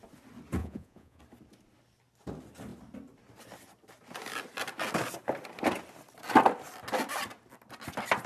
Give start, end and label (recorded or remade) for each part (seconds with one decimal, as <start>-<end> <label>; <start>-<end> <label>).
0.0-0.6 recorded; 0.6-1.2 remade; 1.2-8.3 recorded